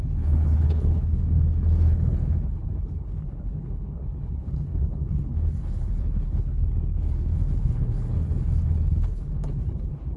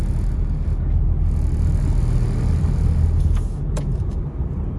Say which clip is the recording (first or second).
second